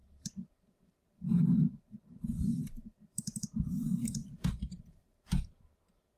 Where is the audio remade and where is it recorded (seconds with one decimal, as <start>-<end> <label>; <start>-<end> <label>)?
0.0-3.7 remade; 3.7-4.2 recorded; 4.2-6.2 remade